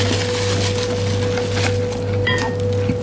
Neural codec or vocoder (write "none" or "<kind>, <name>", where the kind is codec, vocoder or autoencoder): none